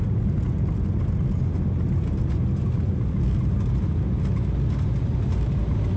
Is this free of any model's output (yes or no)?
yes